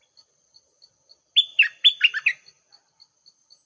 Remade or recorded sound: recorded